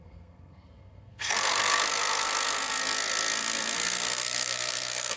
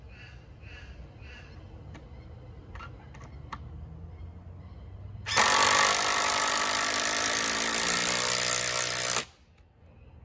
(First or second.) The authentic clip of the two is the second